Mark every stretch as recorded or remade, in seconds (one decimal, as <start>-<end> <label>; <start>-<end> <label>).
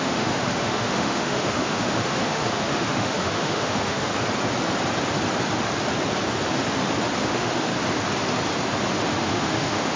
0.0-4.1 remade; 4.1-7.2 recorded; 7.2-7.7 remade; 7.7-9.1 recorded; 9.1-10.0 remade